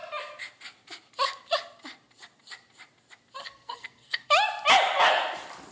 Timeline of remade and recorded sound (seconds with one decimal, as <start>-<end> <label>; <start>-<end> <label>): 0.0-3.4 recorded; 3.4-4.3 remade; 4.3-5.7 recorded